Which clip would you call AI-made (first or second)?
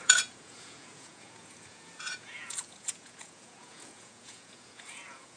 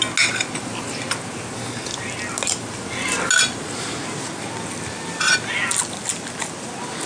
first